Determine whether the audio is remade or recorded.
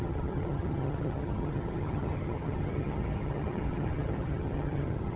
remade